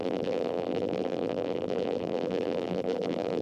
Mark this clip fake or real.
fake